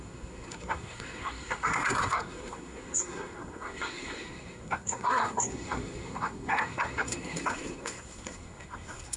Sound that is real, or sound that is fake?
fake